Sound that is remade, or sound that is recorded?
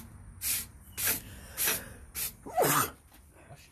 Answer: recorded